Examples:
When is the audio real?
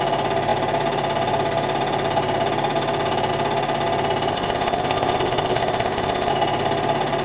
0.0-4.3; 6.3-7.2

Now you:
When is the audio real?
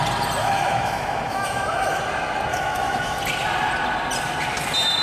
0.0-0.4; 2.0-2.5; 3.2-5.0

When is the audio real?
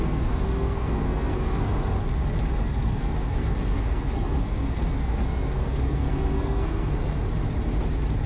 1.7-2.6; 7.2-8.3